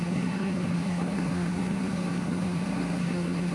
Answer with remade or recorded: remade